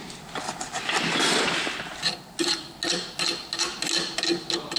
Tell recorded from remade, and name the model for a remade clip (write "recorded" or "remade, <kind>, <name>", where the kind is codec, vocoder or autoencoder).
recorded